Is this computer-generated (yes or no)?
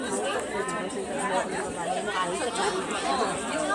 no